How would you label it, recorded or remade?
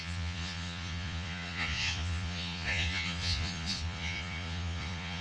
remade